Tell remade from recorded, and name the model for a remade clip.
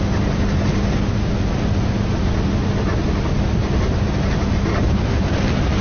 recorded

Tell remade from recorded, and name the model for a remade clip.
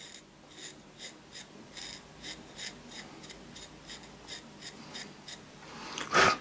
recorded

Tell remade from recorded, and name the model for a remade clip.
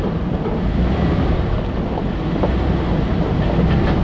recorded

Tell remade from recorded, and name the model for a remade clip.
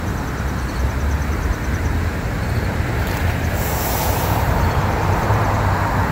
remade, vocoder, BigVGAN v2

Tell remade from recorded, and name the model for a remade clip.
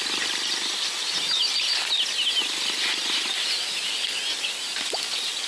recorded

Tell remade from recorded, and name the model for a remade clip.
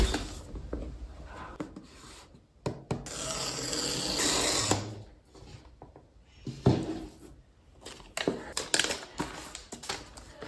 recorded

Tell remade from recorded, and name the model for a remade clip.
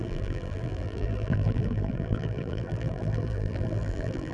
remade, vocoder, BigVGAN v2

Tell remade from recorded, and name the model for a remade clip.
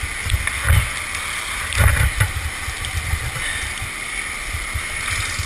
recorded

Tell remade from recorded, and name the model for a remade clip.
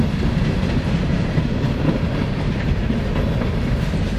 remade, vocoder, BigVGAN v2